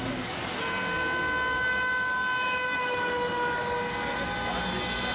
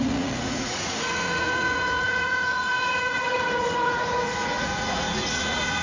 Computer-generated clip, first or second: second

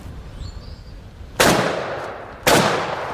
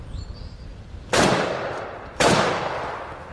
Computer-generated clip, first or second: second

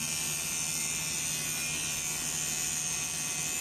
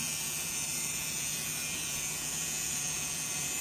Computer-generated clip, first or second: second